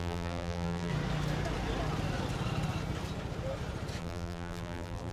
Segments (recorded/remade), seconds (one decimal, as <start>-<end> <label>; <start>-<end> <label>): 0.0-0.9 remade; 0.9-4.0 recorded; 4.0-5.1 remade